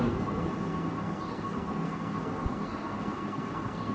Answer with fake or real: fake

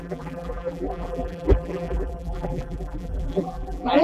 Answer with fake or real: fake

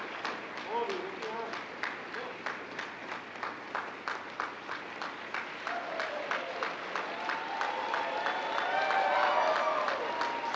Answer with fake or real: real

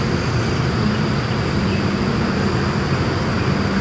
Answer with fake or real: real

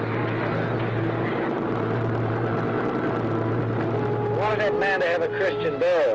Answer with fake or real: real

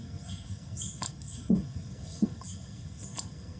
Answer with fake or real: fake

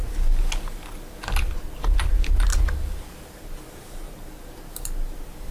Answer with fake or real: real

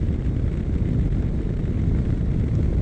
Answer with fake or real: real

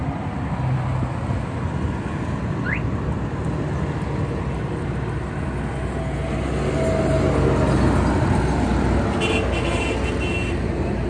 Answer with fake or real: real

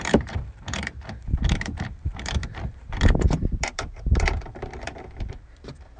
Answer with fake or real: fake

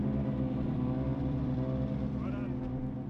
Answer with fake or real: real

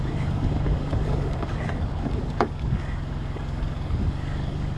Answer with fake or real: fake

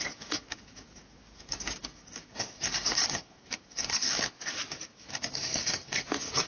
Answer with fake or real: fake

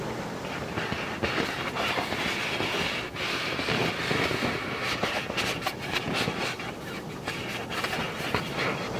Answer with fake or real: real